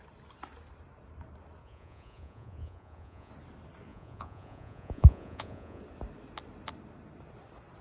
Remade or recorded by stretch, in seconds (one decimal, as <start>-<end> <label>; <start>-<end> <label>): 0.0-1.6 recorded; 1.6-3.3 remade; 3.3-3.9 recorded; 3.9-5.8 remade; 5.8-7.8 recorded